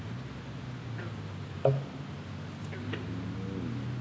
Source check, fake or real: real